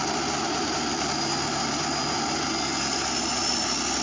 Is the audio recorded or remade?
recorded